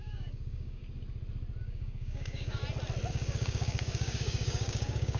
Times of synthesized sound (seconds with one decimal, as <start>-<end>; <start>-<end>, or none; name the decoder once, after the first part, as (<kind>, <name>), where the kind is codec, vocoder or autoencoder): 0.0-0.8 (codec, DAC); 1.6-2.6; 3.1-5.2